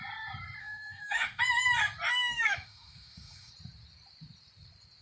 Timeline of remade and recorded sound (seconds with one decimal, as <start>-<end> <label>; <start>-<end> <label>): 0.0-0.6 recorded; 0.6-1.4 remade; 1.4-2.1 recorded; 2.1-3.5 remade; 3.5-5.0 recorded